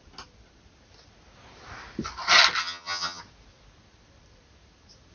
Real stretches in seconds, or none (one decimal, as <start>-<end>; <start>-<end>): 0.0-2.6; 3.2-5.1